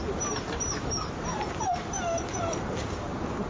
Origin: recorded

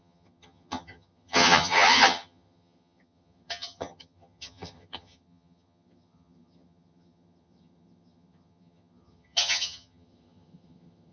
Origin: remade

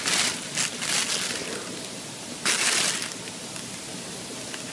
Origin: recorded